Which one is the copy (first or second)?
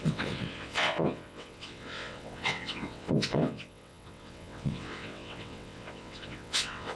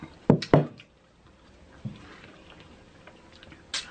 first